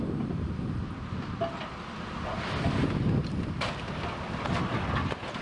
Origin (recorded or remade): recorded